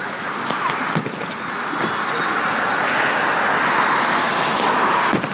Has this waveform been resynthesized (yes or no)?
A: no